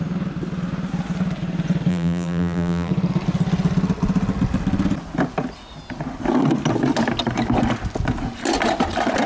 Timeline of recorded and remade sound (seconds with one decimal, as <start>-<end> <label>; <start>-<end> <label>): 0.0-1.9 recorded; 1.9-2.9 remade; 2.9-9.3 recorded